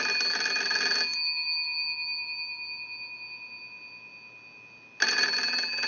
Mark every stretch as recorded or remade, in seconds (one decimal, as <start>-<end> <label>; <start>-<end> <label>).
0.0-5.9 recorded

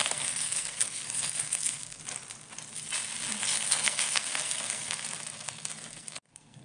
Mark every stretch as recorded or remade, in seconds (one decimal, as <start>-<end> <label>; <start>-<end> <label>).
0.0-2.0 remade; 2.0-3.4 recorded; 3.4-6.6 remade

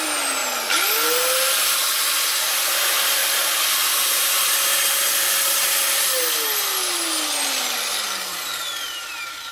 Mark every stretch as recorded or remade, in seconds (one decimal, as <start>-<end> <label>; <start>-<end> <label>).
0.0-9.5 recorded

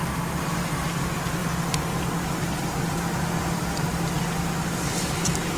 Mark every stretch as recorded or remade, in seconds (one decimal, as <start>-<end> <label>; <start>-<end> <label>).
0.0-5.6 recorded

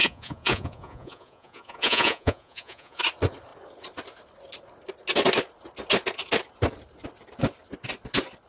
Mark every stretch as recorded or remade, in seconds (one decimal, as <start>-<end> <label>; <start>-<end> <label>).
0.0-3.0 remade; 3.0-8.5 recorded

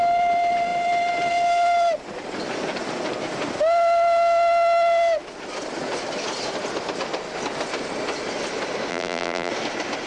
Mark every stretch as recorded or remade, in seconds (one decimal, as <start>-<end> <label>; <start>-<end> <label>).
0.0-8.9 recorded; 8.9-9.5 remade; 9.5-10.1 recorded

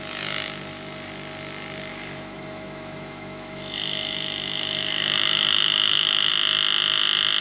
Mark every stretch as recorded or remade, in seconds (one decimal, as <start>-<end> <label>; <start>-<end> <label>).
0.0-1.9 recorded; 1.9-6.3 remade; 6.3-7.4 recorded

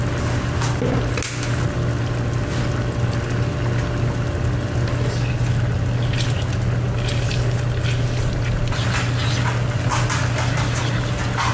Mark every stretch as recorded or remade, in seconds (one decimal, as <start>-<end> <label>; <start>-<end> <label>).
0.0-11.5 recorded